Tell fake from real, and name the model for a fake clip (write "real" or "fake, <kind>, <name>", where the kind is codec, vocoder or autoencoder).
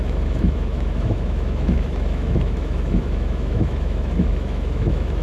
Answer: fake, autoencoder, DAC-VAE